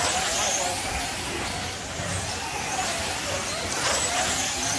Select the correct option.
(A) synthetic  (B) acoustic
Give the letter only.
B